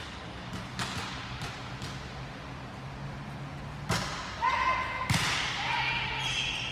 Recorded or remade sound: recorded